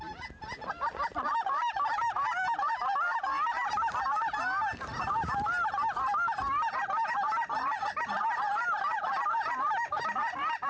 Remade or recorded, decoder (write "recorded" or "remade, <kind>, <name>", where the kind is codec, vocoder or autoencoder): recorded